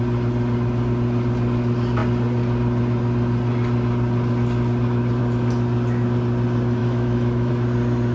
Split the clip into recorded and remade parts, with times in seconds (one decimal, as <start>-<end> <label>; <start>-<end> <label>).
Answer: 0.0-6.8 recorded; 6.8-7.5 remade; 7.5-8.1 recorded